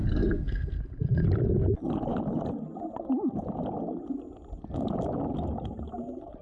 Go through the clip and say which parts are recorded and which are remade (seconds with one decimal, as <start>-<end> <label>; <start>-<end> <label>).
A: 0.0-0.8 remade; 0.8-6.4 recorded